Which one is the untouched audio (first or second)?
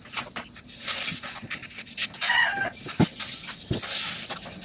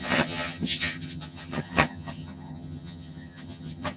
first